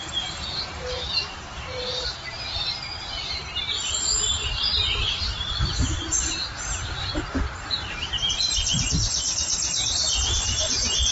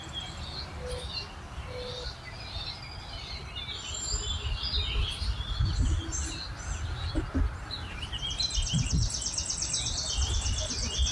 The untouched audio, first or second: second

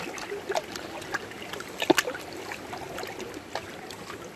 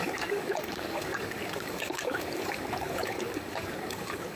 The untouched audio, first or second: first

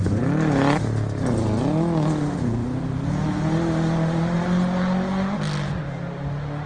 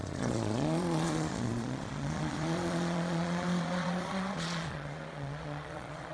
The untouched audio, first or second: first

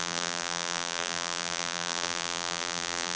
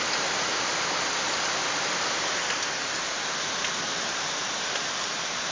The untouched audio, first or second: second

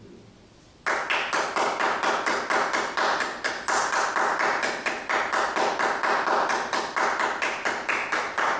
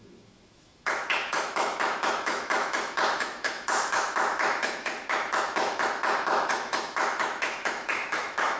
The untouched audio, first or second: first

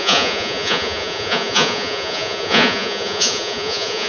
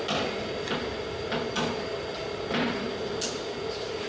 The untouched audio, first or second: second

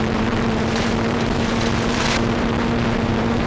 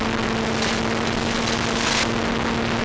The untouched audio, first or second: second